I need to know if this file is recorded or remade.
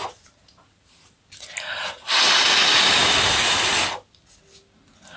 recorded